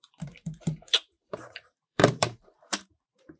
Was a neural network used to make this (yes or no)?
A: yes